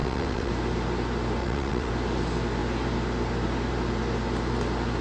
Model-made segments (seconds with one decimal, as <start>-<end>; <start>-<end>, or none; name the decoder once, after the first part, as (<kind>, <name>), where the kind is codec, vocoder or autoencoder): 0.0-0.5 (vocoder, WaveNeXt); 1.4-1.9

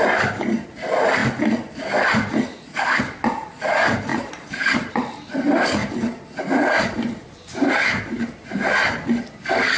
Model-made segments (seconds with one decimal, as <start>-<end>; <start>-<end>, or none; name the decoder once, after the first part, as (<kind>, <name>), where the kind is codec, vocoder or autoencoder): 4.1-4.9 (vocoder, BigVGAN v2); 5.8-6.8; 7.9-8.7

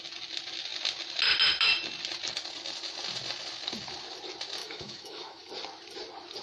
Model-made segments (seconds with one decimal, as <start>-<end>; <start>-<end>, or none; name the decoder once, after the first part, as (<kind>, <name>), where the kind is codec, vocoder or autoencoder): 4.6-5.5 (autoencoder, DAC-VAE)

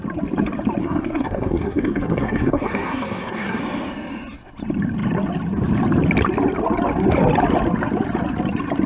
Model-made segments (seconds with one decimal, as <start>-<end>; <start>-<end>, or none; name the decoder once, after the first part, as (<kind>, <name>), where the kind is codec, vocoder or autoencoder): 0.8-3.6 (codec, SNAC)